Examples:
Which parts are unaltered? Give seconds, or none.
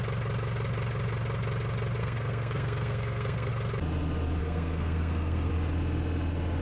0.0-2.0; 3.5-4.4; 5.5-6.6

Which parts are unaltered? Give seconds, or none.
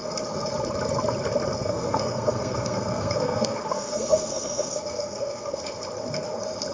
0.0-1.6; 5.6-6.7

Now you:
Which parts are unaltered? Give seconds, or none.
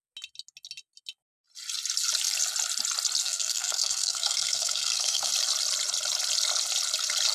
0.0-3.2; 5.3-7.3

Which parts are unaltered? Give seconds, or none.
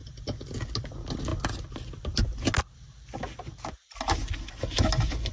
0.0-5.3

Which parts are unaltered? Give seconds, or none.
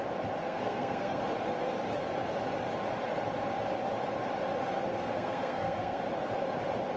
0.0-0.4; 1.2-4.9; 6.0-7.0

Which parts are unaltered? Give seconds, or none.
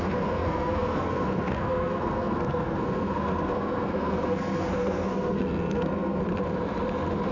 6.2-7.3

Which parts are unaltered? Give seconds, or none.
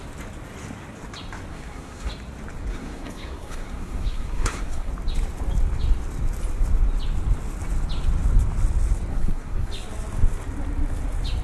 0.0-1.5; 2.1-2.7; 4.9-9.1; 9.7-11.4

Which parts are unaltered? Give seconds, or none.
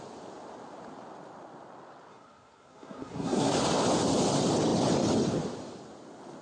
0.0-2.1; 3.5-6.4